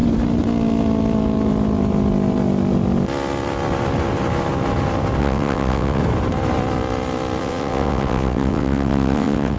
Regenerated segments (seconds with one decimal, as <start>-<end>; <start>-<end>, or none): 5.2-6.0; 7.4-9.6